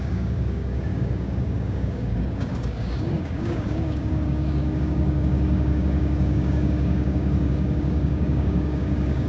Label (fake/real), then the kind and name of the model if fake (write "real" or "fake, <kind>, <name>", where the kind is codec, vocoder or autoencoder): fake, codec, DAC